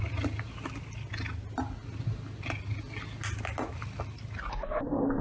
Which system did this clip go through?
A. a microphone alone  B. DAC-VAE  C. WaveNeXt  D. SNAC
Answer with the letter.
A